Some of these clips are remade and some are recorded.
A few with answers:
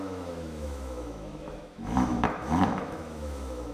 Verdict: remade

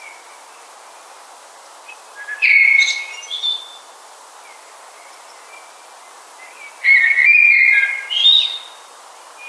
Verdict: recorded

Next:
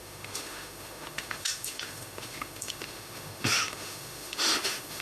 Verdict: remade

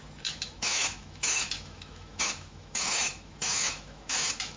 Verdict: remade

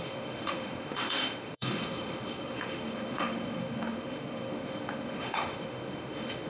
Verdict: remade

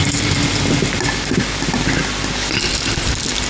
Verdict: recorded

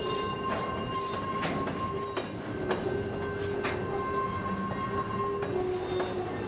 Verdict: recorded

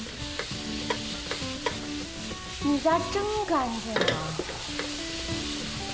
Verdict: recorded